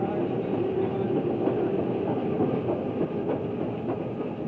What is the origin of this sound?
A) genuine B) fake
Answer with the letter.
A